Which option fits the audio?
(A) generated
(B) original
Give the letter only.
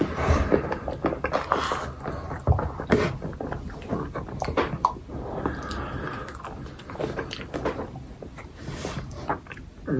B